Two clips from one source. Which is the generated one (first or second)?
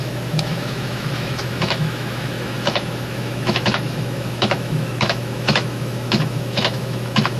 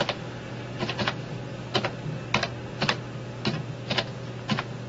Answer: first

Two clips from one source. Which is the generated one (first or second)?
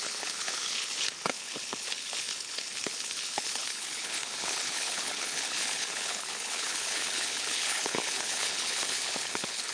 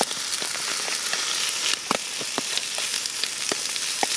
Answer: first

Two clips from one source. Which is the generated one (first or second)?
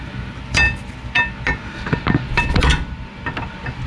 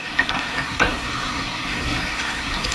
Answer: second